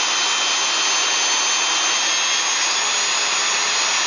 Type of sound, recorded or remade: recorded